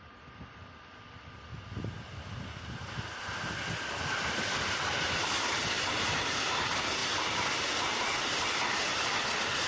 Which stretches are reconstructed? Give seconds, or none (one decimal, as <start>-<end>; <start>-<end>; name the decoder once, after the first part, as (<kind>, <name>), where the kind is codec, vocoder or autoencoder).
0.0-7.0 (vocoder, BigVGAN v2); 8.2-9.7